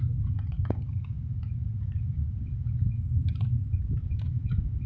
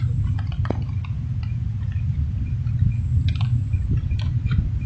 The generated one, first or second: first